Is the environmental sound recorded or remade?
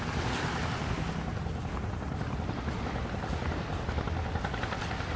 recorded